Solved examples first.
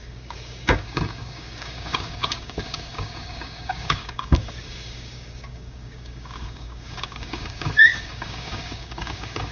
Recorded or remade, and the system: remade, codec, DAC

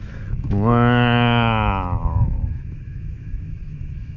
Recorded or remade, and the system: remade, autoencoder, DAC-VAE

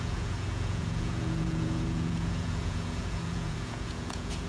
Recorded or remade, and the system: remade, vocoder, Vocos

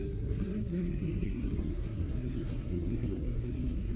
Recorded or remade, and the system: remade, codec, SNAC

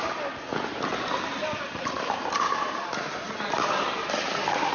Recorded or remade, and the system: recorded